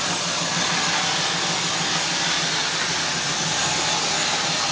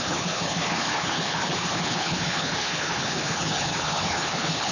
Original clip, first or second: first